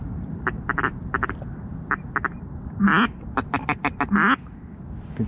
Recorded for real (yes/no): yes